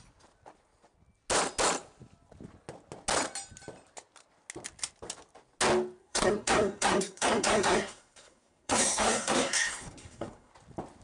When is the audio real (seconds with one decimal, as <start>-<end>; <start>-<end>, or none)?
0.0-6.0; 10.5-11.0